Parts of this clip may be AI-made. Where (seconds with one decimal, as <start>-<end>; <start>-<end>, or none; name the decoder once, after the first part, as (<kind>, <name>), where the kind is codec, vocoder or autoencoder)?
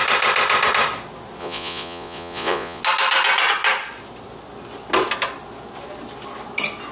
1.4-2.8 (vocoder, Vocos)